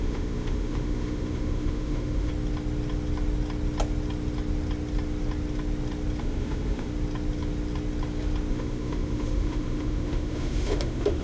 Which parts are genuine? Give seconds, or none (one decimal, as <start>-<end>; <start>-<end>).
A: 2.3-6.2; 6.9-8.5